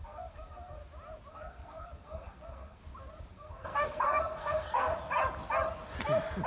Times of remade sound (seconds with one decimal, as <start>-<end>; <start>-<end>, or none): 0.0-0.8; 1.3-2.8; 3.3-4.9